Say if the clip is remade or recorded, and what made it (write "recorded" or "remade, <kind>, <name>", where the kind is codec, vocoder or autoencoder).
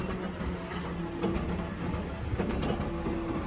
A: recorded